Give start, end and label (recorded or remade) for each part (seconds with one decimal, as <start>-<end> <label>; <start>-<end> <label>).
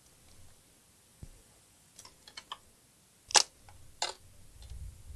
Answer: 0.0-1.1 recorded; 1.1-1.9 remade; 1.9-5.2 recorded